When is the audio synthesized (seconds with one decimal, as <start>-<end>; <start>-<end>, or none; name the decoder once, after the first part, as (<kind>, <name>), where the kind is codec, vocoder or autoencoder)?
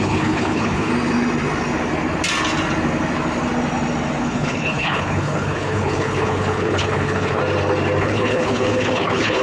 0.0-0.9 (codec, HILCodec); 4.2-7.4; 8.0-9.4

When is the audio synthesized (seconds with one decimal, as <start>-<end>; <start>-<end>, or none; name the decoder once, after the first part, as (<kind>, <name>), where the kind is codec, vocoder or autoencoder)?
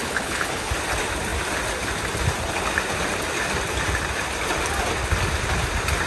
0.0-0.7 (codec, HILCodec)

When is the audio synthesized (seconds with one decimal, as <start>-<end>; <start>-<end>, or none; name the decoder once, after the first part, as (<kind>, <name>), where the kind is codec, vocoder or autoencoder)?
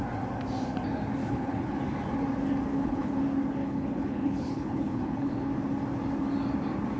1.2-1.8 (codec, HILCodec); 2.7-3.2; 3.6-5.5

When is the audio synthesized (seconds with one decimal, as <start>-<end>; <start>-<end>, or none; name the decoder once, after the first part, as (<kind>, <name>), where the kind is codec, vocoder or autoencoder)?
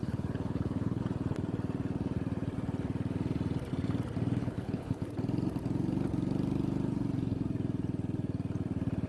0.0-1.0 (codec, HILCodec); 4.4-5.1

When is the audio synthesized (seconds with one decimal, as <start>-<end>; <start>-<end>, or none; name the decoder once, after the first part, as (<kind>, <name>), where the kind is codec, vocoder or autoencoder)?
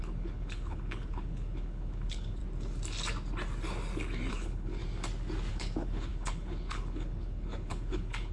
0.0-2.4 (codec, HILCodec); 4.3-4.8; 5.5-8.3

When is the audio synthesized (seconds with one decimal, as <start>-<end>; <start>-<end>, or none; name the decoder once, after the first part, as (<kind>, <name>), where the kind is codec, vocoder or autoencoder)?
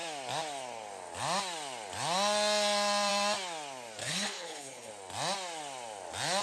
4.0-4.9 (codec, HILCodec)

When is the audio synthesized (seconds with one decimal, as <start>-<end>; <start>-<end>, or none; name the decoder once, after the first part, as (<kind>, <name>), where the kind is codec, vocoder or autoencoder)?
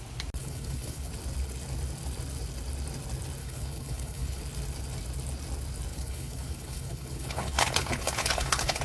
0.4-1.1 (codec, HILCodec); 3.4-4.4; 5.9-8.8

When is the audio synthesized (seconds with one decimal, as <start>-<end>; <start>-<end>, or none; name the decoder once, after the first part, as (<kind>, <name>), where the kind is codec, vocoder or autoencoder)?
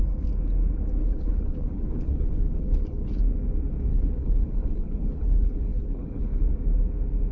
1.0-3.2 (codec, HILCodec); 3.9-6.4